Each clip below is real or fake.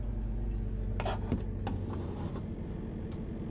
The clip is real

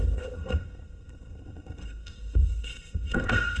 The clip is fake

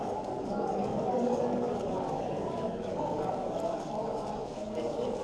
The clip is fake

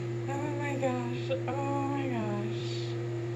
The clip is fake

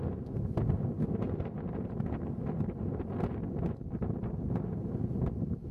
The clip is real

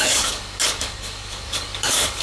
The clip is fake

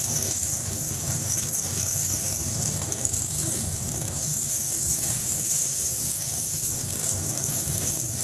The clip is fake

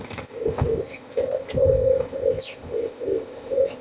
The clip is fake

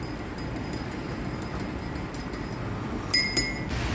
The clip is real